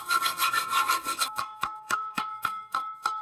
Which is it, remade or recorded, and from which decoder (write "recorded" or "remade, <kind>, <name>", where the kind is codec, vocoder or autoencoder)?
remade, codec, SNAC